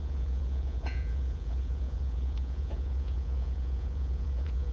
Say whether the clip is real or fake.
fake